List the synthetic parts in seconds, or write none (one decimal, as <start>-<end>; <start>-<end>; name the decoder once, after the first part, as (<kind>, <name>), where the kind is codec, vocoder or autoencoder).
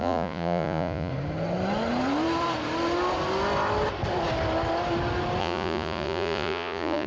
0.0-1.1 (vocoder, Vocos); 5.4-7.1